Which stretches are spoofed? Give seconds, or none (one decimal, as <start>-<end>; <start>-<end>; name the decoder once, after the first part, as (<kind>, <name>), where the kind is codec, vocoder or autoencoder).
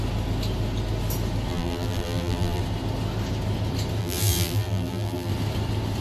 1.5-2.6 (vocoder, BigVGAN v2); 4.0-5.3